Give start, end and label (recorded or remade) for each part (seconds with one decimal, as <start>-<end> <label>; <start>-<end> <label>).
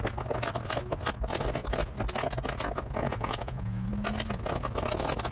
0.0-3.0 recorded; 3.0-3.9 remade; 3.9-5.3 recorded